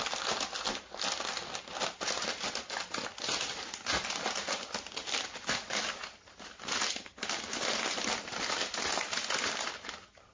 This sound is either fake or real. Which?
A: real